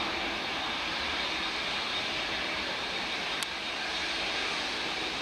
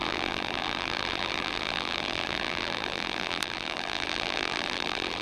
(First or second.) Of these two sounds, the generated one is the second